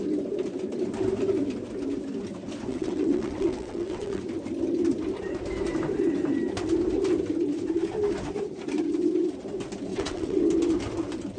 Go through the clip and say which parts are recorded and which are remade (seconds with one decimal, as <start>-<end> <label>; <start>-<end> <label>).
0.0-2.7 recorded; 2.7-4.2 remade; 4.2-9.9 recorded; 9.9-10.4 remade; 10.4-11.4 recorded